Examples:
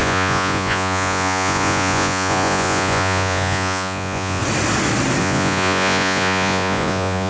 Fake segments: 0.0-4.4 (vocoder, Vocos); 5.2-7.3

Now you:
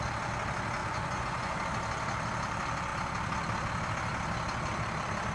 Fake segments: 0.8-1.6 (vocoder, Vocos)

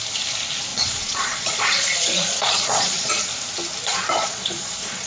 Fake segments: 0.7-3.1 (vocoder, Vocos); 3.9-5.1

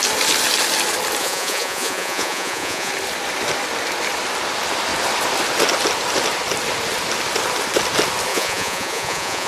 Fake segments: 1.2-2.9 (vocoder, Vocos); 8.3-9.5